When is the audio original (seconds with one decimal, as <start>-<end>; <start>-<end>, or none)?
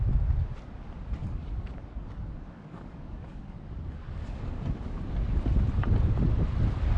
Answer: 0.0-1.2; 4.6-7.0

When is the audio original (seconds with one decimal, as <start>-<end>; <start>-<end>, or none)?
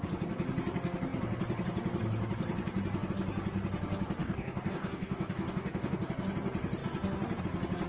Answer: 0.0-4.2; 6.1-7.9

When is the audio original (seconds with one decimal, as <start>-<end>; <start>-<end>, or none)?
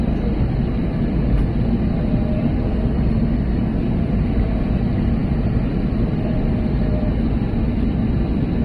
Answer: 0.0-8.6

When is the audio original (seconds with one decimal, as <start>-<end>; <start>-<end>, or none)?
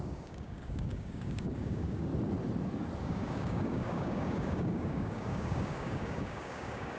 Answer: 2.1-3.0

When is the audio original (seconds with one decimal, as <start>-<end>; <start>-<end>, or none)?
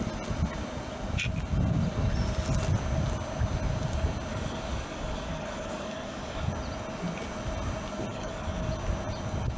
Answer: 0.0-4.3; 6.5-8.1; 8.7-9.6